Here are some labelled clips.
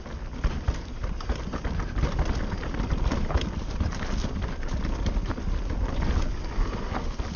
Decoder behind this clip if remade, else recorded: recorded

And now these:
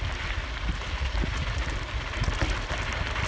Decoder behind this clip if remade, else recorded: recorded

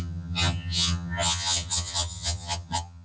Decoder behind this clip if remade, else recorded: remade, vocoder, HiFi-GAN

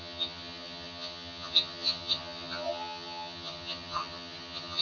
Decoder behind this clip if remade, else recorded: remade, vocoder, HiFi-GAN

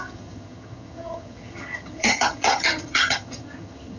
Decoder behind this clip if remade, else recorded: remade, vocoder, HiFi-GAN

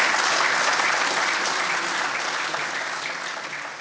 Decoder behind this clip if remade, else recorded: recorded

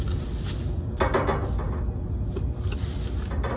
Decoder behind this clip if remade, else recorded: recorded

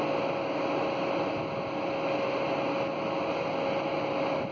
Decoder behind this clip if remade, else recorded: recorded